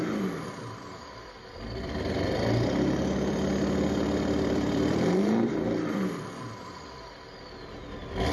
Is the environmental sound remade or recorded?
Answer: remade